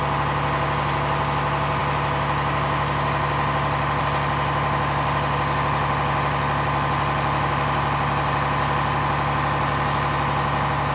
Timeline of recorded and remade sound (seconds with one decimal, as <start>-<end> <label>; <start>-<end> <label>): 0.0-10.9 recorded